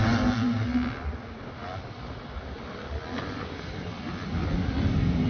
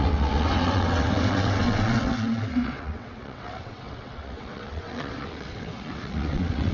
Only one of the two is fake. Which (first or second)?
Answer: second